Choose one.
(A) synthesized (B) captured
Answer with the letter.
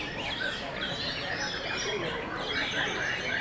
A